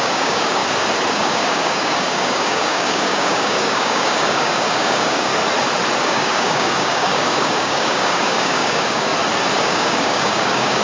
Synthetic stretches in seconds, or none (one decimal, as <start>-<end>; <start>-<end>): 0.0-0.6; 1.1-5.3; 6.0-9.1; 9.6-10.8